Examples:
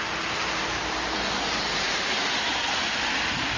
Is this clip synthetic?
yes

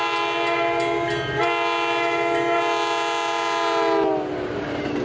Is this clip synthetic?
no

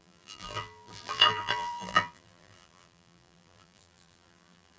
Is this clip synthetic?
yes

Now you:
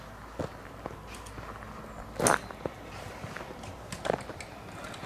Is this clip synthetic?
no